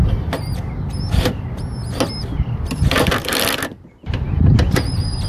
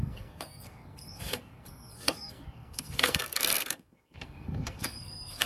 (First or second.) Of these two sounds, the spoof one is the second